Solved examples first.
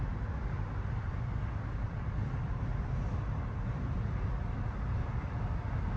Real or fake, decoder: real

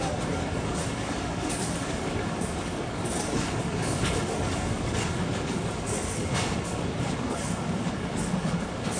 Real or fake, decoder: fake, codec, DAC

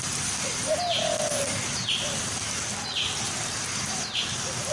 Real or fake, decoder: real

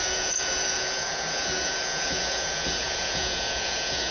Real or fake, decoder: fake, vocoder, Vocos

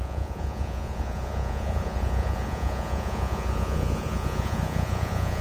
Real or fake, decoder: fake, vocoder, Vocos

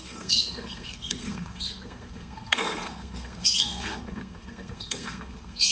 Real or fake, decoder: fake, codec, SNAC